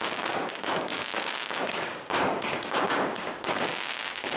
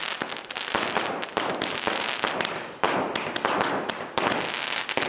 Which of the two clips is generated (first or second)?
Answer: first